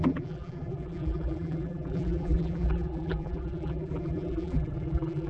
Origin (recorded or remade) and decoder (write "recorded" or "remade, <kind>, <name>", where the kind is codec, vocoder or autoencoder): remade, vocoder, BigVGAN v2